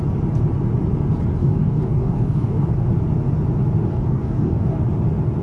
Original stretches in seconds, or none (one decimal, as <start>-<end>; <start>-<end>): 0.0-1.4; 2.7-3.9; 4.8-5.4